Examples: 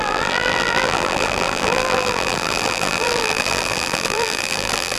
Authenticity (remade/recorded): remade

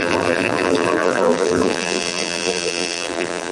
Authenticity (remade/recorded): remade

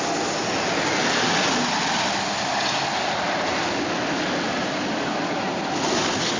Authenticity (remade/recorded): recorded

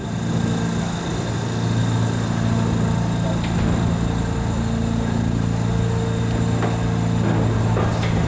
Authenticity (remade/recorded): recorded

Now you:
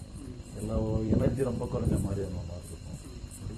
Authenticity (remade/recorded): remade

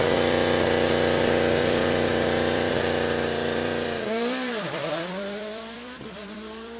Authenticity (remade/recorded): remade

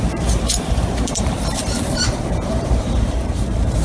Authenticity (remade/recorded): remade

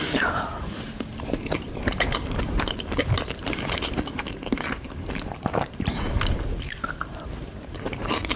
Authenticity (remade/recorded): remade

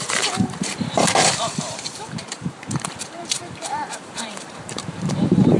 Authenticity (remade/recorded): remade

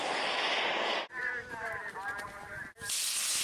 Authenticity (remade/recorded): recorded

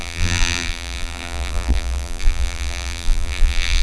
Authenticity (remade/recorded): remade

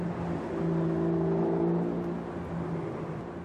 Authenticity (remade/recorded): recorded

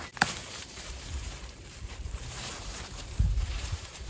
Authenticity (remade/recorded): remade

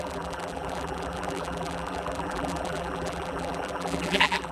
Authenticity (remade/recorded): remade